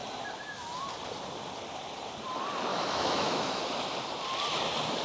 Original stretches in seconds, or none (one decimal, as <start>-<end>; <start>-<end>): 0.0-2.7; 3.6-5.0

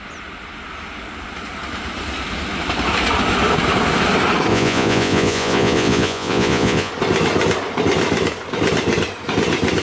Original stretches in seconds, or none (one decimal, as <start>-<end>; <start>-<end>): 0.0-4.5; 6.9-9.8

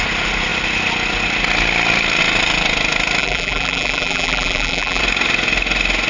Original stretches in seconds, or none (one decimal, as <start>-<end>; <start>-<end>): 0.0-3.2; 5.0-6.1

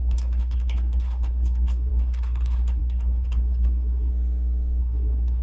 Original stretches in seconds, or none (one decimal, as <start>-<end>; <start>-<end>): 4.1-4.8

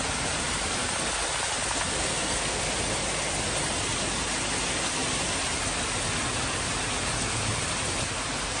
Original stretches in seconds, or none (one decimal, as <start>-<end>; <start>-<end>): 0.0-2.1; 2.6-8.6